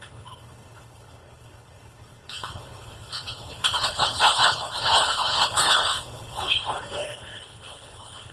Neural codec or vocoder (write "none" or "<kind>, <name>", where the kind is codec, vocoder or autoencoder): codec, HILCodec